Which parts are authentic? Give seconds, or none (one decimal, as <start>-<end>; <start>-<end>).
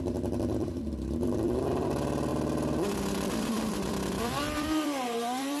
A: none